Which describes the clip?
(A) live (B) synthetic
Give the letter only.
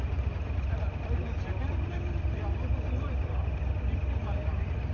A